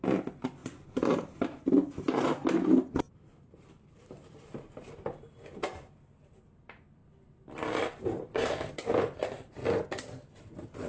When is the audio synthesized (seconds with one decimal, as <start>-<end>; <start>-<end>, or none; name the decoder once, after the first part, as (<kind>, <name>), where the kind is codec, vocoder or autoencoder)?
0.0-7.0 (vocoder, BigVGAN v2); 8.0-9.6; 10.4-10.9